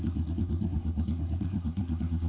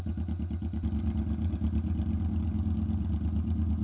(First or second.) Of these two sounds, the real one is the second